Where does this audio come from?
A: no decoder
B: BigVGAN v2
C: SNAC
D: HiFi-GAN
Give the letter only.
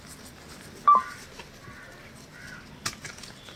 A